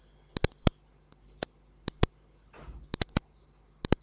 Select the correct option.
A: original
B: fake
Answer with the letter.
A